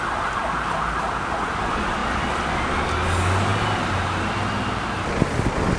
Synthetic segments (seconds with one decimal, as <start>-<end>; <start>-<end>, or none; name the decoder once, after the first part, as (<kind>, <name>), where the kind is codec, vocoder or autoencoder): none